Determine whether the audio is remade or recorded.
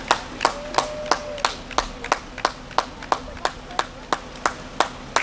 recorded